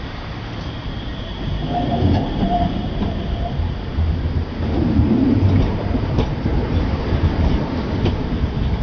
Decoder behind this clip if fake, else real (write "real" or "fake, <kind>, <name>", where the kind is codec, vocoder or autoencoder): fake, vocoder, BigVGAN v2